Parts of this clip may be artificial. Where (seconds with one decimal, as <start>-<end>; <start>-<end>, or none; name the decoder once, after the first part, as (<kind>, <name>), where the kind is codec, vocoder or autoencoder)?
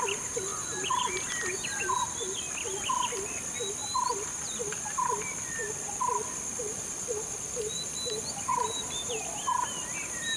none